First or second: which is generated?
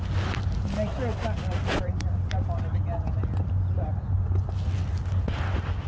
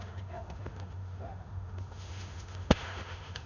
second